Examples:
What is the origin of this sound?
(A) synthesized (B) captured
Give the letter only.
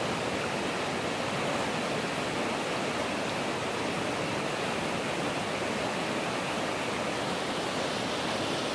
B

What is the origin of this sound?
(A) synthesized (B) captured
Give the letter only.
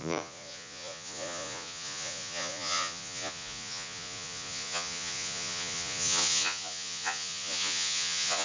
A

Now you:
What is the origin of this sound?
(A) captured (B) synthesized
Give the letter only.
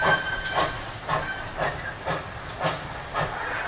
A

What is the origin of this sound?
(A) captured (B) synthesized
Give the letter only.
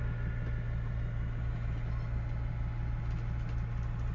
A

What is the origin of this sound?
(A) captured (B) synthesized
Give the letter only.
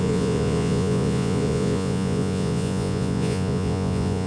B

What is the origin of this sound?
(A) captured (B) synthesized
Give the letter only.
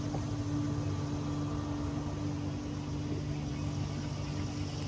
A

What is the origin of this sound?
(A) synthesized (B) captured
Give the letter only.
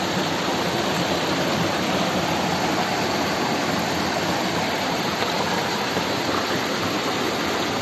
B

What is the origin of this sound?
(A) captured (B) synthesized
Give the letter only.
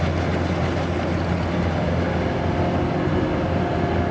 A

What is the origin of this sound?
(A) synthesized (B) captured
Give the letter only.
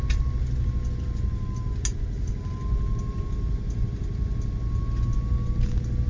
B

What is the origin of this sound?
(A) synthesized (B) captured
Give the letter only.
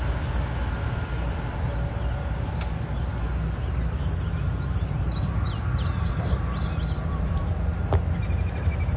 B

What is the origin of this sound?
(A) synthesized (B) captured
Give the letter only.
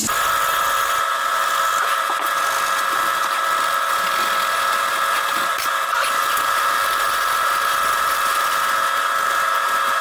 B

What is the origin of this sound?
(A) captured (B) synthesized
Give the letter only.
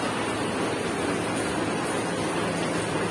A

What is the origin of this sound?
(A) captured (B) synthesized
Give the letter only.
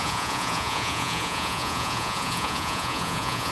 B